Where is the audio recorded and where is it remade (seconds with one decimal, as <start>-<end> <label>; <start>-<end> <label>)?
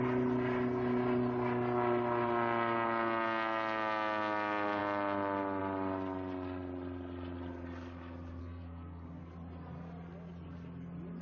0.0-8.4 recorded; 8.4-9.2 remade; 9.2-11.2 recorded